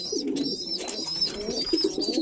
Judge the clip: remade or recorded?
recorded